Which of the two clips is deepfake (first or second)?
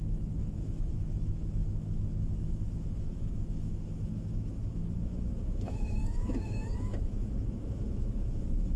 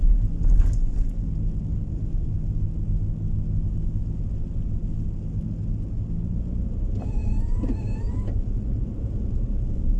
first